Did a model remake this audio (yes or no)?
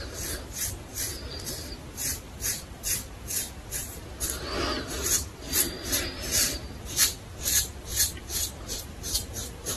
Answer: yes